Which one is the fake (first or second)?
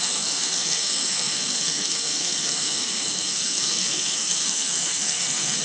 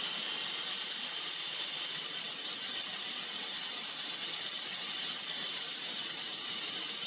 first